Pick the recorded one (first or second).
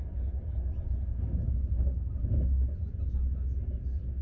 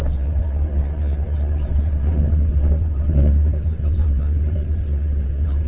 first